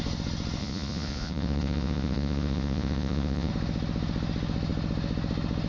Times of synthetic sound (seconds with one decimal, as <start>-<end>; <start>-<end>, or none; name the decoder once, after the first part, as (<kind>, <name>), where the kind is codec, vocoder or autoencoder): 0.6-3.5 (vocoder, Vocos)